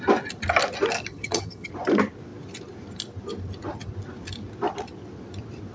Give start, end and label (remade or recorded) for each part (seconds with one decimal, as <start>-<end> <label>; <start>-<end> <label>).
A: 0.0-1.1 recorded; 1.1-1.7 remade; 1.7-5.7 recorded